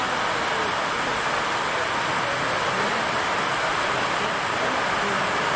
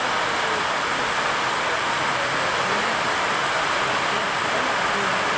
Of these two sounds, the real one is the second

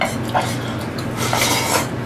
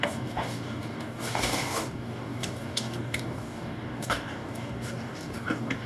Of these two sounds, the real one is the first